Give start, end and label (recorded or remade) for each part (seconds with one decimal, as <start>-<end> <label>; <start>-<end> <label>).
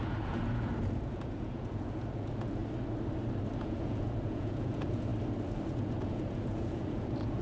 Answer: 0.0-2.6 remade; 2.6-3.6 recorded; 3.6-5.1 remade; 5.1-5.7 recorded; 5.7-7.4 remade